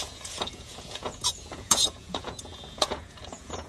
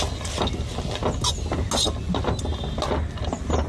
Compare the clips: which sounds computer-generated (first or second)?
first